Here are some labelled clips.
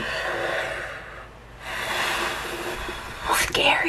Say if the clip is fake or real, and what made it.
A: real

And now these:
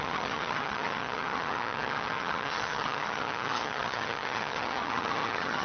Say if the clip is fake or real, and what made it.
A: fake, vocoder, HiFi-GAN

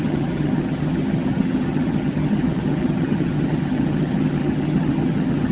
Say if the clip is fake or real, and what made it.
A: fake, vocoder, HiFi-GAN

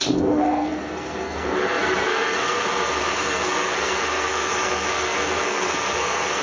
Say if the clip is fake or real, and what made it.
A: fake, codec, SNAC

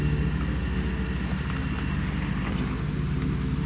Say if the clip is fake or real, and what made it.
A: real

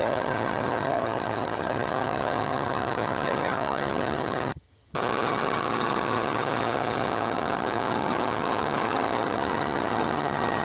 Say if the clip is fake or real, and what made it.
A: fake, vocoder, HiFi-GAN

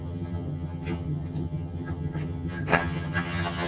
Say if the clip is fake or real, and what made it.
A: fake, vocoder, HiFi-GAN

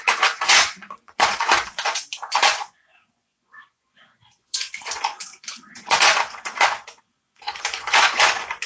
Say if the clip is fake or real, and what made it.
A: fake, vocoder, Vocos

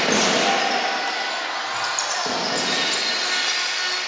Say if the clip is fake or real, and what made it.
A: real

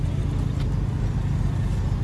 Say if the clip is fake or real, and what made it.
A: real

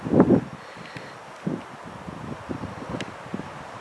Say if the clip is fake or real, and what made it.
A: real